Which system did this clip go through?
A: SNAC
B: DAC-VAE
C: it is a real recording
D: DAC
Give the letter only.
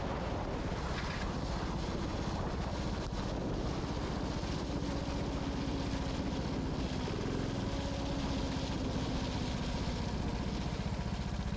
C